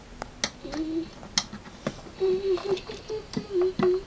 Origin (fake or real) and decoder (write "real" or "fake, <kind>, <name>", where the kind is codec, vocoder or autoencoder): real